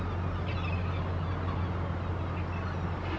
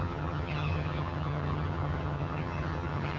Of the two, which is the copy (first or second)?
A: second